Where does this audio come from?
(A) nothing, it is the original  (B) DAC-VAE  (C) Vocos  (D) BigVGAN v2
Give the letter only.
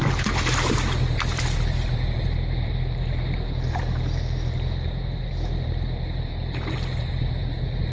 D